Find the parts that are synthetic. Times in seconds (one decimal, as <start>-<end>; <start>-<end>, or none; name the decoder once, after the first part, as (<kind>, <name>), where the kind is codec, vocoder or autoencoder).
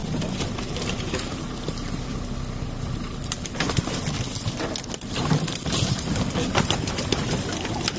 1.1-2.1 (vocoder, BigVGAN v2); 5.1-8.0